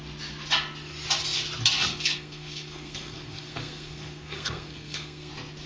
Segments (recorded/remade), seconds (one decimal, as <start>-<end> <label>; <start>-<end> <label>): 0.0-1.9 recorded; 1.9-5.3 remade; 5.3-5.7 recorded